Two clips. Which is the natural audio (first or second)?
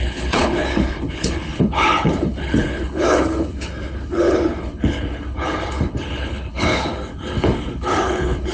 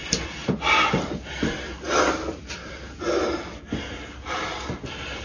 second